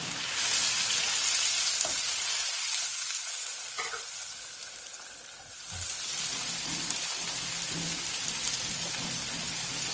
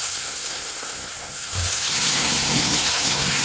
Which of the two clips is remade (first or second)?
second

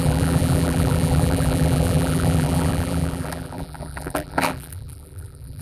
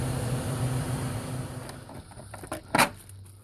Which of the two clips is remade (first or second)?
first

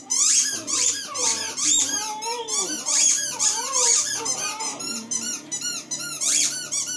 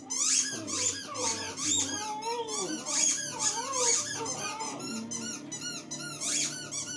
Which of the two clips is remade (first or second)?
first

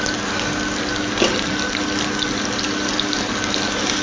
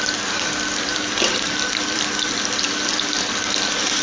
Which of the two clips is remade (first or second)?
second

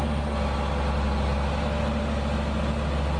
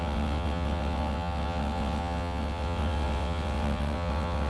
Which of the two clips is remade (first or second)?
second